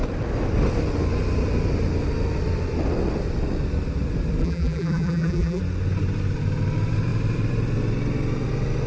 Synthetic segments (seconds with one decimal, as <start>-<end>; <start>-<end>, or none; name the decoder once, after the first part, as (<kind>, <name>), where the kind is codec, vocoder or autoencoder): 4.4-5.6 (vocoder, BigVGAN v2)